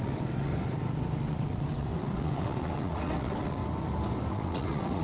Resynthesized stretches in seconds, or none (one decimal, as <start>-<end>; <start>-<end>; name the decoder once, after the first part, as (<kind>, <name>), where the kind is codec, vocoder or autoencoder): 0.0-0.5 (vocoder, WaveNeXt); 1.2-3.6; 4.3-5.0